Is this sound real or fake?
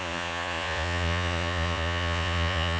fake